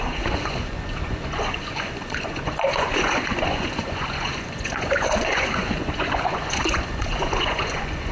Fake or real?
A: fake